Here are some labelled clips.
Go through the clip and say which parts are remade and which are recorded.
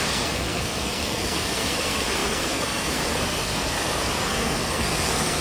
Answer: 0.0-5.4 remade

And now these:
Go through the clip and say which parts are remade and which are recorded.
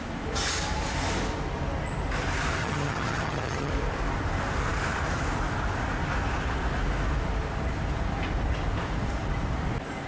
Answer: 0.0-2.6 recorded; 2.6-3.7 remade; 3.7-10.1 recorded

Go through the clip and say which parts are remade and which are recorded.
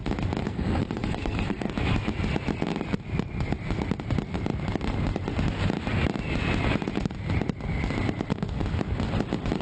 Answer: 0.0-0.4 recorded; 0.4-1.7 remade; 1.7-9.6 recorded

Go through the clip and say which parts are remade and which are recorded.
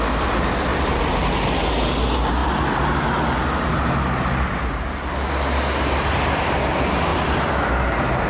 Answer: 0.0-0.7 recorded; 0.7-1.2 remade; 1.2-8.3 recorded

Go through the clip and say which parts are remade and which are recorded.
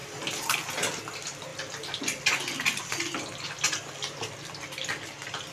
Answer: 0.0-5.5 recorded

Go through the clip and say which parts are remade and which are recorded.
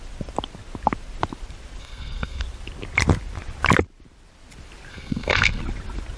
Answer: 0.0-1.8 recorded; 1.8-2.4 remade; 2.4-4.9 recorded; 4.9-5.6 remade; 5.6-6.2 recorded